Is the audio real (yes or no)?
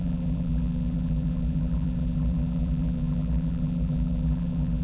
no